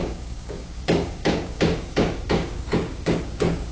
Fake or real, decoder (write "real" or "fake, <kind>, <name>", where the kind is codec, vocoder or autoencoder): fake, codec, DAC